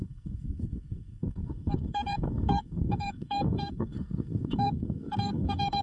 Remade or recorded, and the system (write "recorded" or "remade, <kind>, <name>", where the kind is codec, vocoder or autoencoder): remade, codec, SNAC